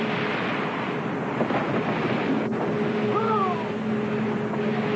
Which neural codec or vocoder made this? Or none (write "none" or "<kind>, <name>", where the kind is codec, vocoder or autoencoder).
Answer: none